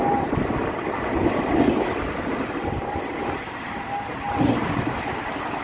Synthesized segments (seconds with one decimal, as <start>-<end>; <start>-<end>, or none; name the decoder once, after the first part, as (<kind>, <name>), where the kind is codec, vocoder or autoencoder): 2.3-3.1 (vocoder, BigVGAN v2)